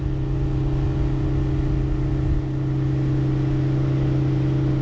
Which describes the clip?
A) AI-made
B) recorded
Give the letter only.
B